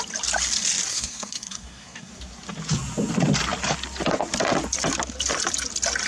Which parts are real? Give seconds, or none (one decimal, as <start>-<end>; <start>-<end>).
0.0-0.9; 2.1-6.1

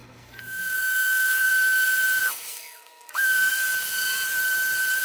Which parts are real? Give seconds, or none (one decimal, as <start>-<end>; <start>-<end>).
1.5-2.2; 3.7-5.0